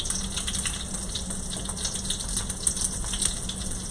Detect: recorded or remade recorded